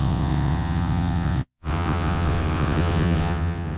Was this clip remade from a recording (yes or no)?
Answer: yes